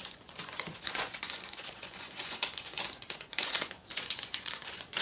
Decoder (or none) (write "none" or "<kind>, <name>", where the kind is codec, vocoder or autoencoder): vocoder, Vocos